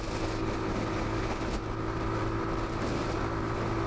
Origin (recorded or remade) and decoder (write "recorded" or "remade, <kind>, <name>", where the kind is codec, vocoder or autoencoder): recorded